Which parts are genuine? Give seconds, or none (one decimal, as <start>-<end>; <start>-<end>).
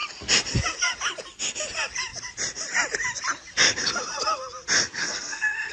0.0-5.0